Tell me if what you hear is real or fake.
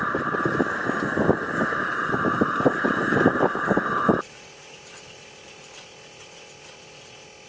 real